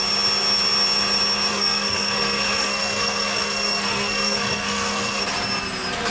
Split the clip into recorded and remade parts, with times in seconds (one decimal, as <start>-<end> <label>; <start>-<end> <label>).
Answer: 0.0-1.5 recorded; 1.5-5.2 remade; 5.2-6.1 recorded

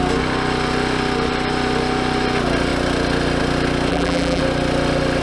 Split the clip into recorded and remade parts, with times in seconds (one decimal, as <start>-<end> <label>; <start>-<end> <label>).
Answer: 0.0-3.9 recorded; 3.9-4.4 remade; 4.4-5.2 recorded

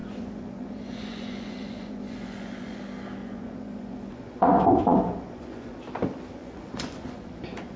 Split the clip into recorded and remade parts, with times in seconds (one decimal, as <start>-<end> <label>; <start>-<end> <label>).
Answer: 0.0-2.8 remade; 2.8-3.2 recorded; 3.2-5.8 remade; 5.8-6.4 recorded; 6.4-7.8 remade

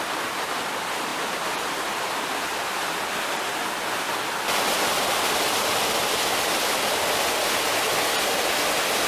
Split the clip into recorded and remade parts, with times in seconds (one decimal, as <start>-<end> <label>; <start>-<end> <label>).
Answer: 0.0-9.1 recorded

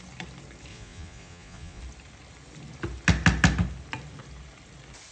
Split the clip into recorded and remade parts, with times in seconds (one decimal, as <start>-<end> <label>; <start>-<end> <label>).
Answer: 0.0-0.7 recorded; 0.7-1.8 remade; 1.8-5.1 recorded

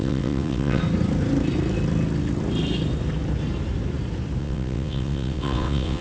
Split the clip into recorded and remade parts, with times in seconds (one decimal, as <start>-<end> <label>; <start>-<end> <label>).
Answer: 0.0-0.8 remade; 0.8-4.4 recorded; 4.4-6.0 remade

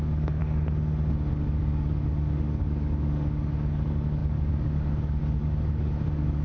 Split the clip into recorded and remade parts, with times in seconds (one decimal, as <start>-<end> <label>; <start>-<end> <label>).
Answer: 0.0-0.4 remade; 0.4-1.3 recorded; 1.3-6.4 remade